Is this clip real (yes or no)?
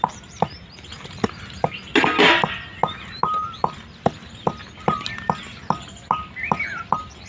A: yes